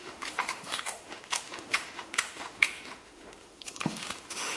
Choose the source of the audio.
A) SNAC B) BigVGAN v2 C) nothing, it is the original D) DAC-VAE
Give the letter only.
D